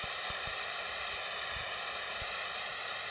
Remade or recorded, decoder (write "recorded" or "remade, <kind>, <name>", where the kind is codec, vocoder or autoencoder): recorded